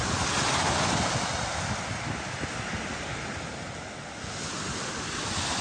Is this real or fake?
real